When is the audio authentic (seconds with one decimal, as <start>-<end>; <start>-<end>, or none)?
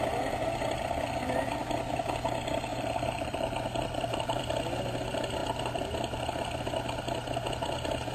0.0-2.7; 4.4-8.1